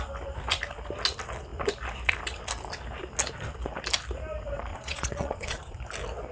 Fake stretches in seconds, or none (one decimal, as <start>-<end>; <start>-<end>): 4.7-5.8